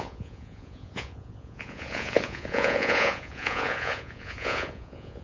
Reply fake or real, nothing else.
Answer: fake